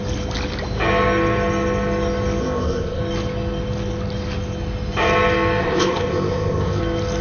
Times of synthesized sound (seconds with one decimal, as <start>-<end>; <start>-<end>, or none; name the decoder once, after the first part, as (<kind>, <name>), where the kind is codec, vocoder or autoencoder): 2.4-3.0 (codec, ZipCodec); 5.6-6.8

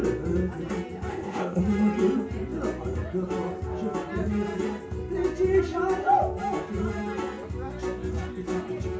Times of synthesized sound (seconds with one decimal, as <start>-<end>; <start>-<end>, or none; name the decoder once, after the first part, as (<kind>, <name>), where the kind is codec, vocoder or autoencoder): 1.1-1.6 (codec, ZipCodec)

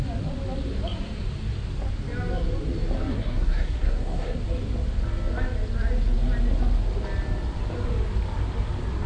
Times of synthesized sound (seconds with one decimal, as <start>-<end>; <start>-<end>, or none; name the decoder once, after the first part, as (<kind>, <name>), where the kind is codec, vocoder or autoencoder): 3.1-4.4 (codec, SNAC)